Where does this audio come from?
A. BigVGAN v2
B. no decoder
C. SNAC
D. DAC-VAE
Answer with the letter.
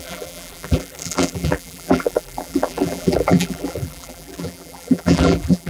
A